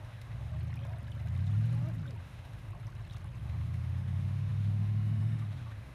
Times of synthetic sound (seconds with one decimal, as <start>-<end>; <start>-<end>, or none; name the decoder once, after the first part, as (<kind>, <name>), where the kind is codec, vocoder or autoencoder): 0.0-0.5 (autoencoder, DAC-VAE); 2.2-2.7; 3.4-5.9